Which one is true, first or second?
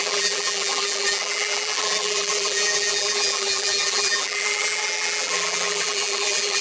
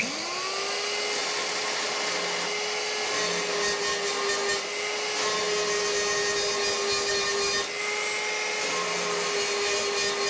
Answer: second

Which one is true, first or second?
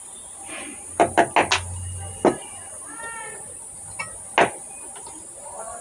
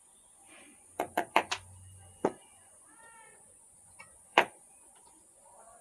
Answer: first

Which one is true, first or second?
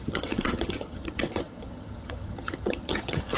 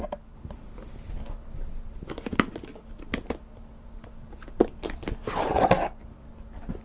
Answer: second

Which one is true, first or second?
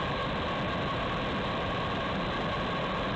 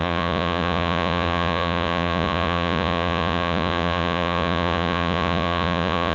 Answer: first